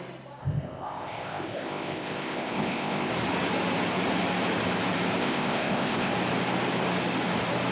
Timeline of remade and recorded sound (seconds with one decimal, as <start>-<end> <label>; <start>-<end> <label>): 0.0-0.4 recorded; 0.4-3.1 remade; 3.1-5.2 recorded; 5.2-6.1 remade; 6.1-7.7 recorded